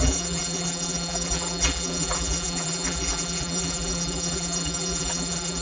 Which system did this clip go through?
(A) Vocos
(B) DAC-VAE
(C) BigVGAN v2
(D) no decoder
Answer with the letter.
C